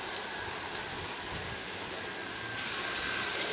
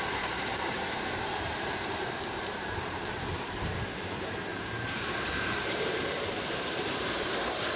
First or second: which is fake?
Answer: second